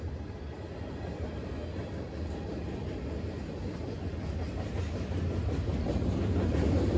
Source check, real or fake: real